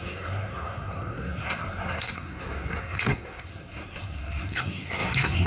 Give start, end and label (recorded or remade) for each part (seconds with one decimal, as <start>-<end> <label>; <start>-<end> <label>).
0.0-5.5 remade